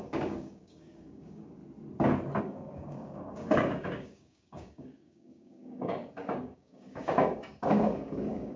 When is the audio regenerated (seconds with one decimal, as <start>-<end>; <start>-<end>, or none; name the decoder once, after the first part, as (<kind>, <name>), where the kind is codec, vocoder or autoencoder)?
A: 0.0-1.6 (codec, DAC); 2.4-8.6